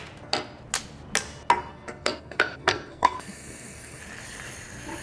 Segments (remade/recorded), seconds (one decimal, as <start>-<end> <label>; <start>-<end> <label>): 0.0-1.7 recorded; 1.7-4.0 remade; 4.0-5.0 recorded